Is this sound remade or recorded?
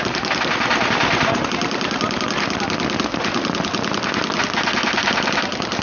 recorded